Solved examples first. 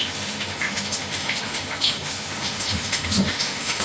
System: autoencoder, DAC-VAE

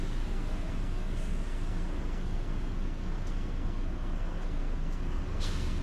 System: codec, SNAC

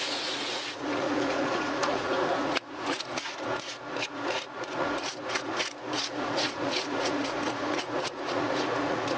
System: vocoder, Vocos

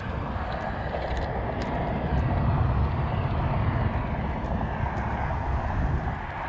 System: none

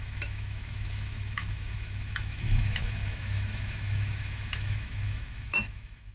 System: autoencoder, DAC-VAE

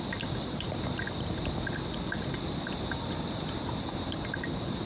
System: none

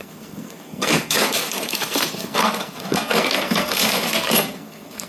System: codec, SNAC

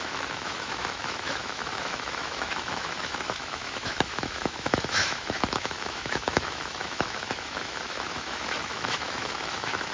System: autoencoder, DAC-VAE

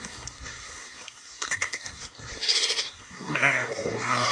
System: codec, SNAC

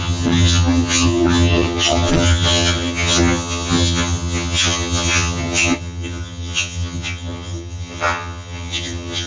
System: vocoder, HiFi-GAN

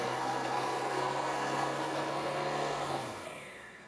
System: codec, SNAC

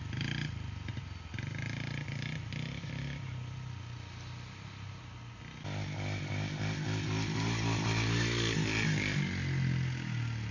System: none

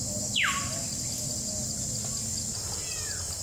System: none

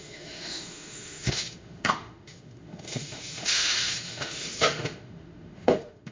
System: autoencoder, DAC-VAE